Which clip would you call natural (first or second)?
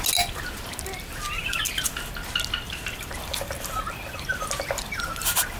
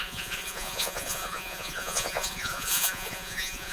first